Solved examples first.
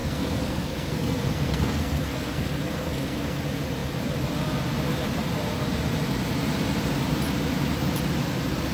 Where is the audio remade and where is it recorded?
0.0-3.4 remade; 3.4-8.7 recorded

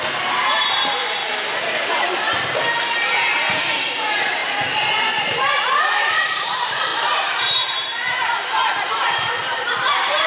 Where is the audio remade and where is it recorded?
0.0-1.2 remade; 1.2-1.9 recorded; 1.9-4.4 remade; 4.4-5.1 recorded; 5.1-10.3 remade

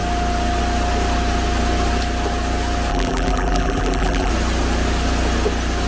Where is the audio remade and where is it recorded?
0.0-2.9 recorded; 2.9-4.3 remade; 4.3-5.9 recorded

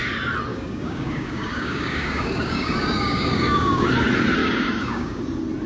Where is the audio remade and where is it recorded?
0.0-0.5 recorded; 0.5-3.9 remade; 3.9-4.4 recorded; 4.4-5.2 remade; 5.2-5.7 recorded

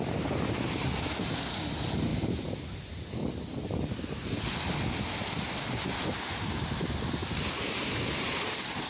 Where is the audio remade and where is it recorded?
0.0-8.9 recorded